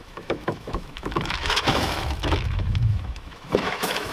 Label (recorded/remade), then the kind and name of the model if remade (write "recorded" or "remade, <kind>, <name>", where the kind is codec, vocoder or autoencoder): remade, autoencoder, DAC-VAE